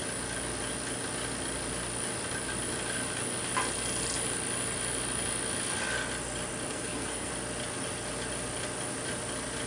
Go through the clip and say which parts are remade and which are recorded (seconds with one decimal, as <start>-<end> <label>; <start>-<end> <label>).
0.0-6.7 recorded; 6.7-7.3 remade; 7.3-9.7 recorded

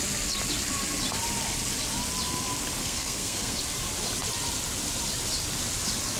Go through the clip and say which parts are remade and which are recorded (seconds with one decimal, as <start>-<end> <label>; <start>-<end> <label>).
0.0-2.8 recorded; 2.8-3.6 remade; 3.6-6.2 recorded

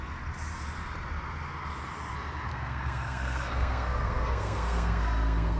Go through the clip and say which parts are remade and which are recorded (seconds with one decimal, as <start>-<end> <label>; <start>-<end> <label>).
0.0-2.5 recorded; 2.5-5.6 remade

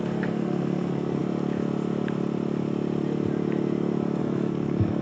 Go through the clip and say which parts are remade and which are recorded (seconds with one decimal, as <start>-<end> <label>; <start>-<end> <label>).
0.0-1.2 remade; 1.2-4.2 recorded; 4.2-5.0 remade

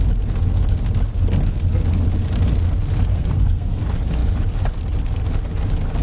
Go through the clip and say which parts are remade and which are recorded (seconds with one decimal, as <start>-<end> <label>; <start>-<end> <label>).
0.0-3.1 recorded; 3.1-3.8 remade; 3.8-6.0 recorded

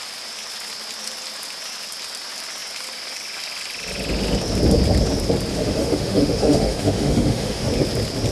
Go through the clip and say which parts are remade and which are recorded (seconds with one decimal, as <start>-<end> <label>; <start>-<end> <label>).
0.0-5.5 recorded; 5.5-7.7 remade; 7.7-8.3 recorded